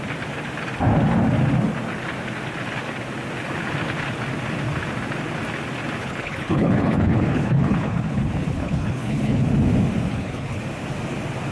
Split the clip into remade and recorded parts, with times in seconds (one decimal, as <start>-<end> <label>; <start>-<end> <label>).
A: 0.0-6.0 recorded; 6.0-9.5 remade; 9.5-10.1 recorded; 10.1-10.6 remade; 10.6-11.5 recorded